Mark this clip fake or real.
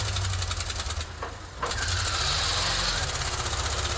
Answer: real